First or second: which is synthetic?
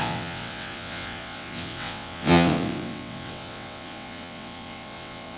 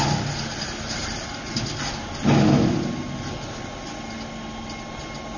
first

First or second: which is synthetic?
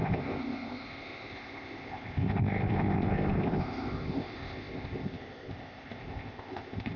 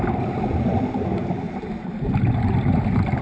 first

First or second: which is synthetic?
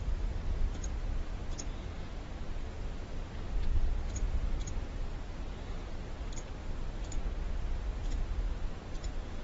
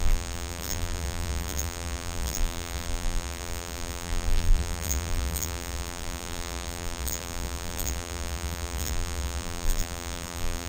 second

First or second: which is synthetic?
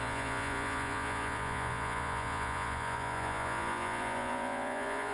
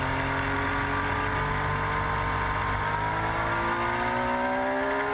first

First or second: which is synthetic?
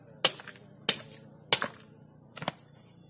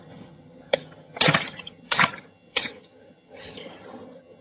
second